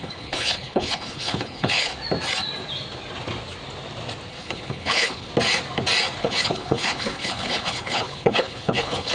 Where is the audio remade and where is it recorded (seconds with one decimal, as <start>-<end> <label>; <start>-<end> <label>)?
0.0-1.9 remade; 1.9-4.3 recorded; 4.3-5.3 remade; 5.3-6.2 recorded; 6.2-9.1 remade